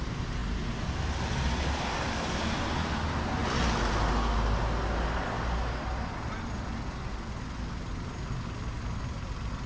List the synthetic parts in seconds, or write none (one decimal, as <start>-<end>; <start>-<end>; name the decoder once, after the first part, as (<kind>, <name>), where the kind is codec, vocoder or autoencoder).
none